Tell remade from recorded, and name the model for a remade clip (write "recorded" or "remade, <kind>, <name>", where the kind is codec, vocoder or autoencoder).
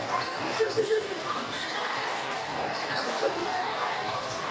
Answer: remade, codec, DAC